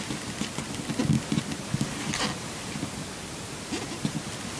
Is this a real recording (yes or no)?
yes